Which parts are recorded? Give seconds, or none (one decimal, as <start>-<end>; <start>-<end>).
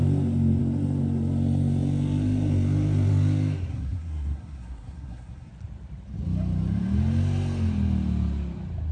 0.0-3.7; 5.5-8.9